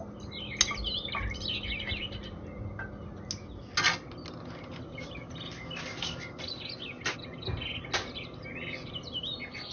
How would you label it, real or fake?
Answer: real